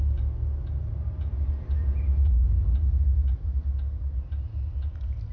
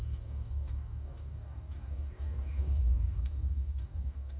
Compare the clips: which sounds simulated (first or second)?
second